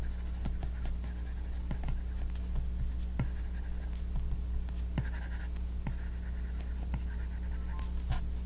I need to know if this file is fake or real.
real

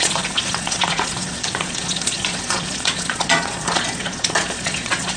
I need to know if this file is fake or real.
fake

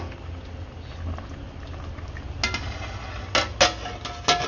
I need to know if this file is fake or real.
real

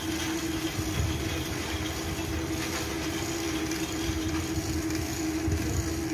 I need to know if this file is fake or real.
real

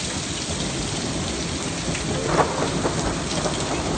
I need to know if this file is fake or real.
real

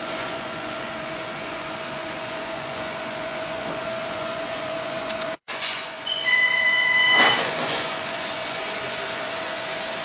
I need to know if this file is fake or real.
fake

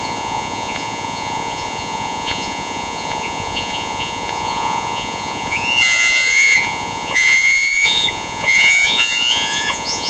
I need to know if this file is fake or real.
fake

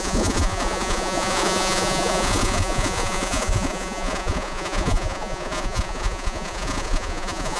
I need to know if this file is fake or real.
fake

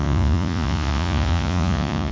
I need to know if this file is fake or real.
fake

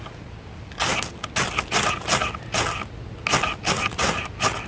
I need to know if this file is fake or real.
real